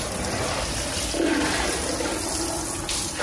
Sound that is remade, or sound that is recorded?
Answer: recorded